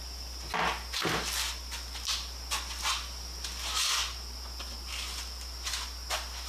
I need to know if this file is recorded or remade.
recorded